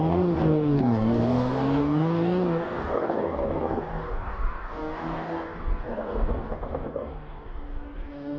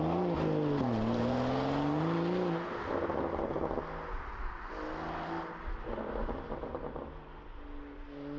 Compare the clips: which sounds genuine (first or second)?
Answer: second